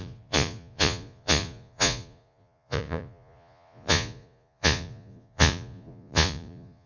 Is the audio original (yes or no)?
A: no